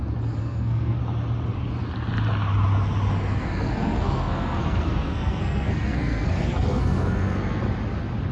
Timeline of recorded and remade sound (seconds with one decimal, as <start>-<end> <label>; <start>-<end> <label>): 0.0-0.4 recorded; 0.4-1.0 remade; 1.0-3.3 recorded; 3.3-7.6 remade; 7.6-8.3 recorded